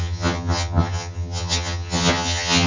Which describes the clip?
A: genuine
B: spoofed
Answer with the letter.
B